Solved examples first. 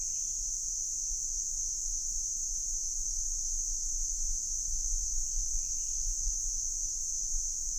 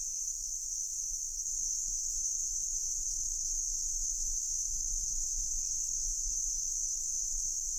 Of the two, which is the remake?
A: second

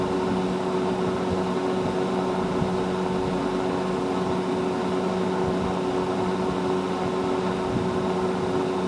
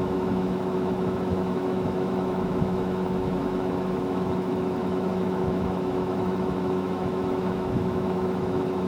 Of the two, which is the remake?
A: second